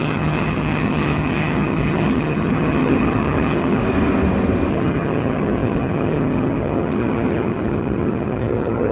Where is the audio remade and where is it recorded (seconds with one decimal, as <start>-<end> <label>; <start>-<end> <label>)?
0.0-3.8 remade; 3.8-4.7 recorded; 4.7-8.9 remade

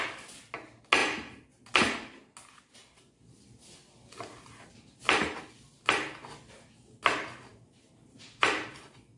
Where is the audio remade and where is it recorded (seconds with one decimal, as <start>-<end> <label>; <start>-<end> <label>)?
0.0-7.5 recorded; 7.5-9.2 remade

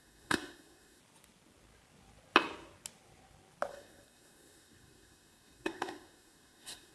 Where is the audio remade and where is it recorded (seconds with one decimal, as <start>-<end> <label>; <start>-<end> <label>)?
0.0-1.0 remade; 1.0-3.7 recorded; 3.7-6.9 remade

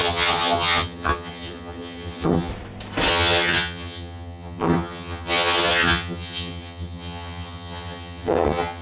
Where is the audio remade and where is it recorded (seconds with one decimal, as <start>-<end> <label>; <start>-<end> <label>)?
0.0-2.5 remade; 2.5-3.1 recorded; 3.1-8.8 remade

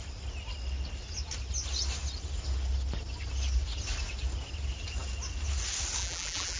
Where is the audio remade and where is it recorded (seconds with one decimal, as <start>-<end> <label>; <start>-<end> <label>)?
0.0-6.0 recorded; 6.0-6.6 remade

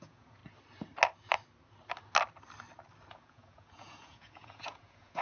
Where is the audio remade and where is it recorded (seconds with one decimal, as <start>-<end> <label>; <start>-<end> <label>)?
0.0-0.4 remade; 0.4-3.1 recorded; 3.1-5.2 remade

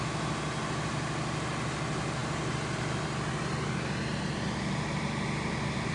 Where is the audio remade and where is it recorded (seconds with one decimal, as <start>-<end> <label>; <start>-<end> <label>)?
0.0-5.9 recorded